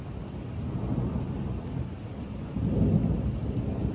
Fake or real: real